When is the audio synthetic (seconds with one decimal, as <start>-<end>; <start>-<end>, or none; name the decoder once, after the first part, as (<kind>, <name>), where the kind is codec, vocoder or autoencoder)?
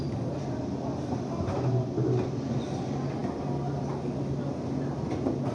none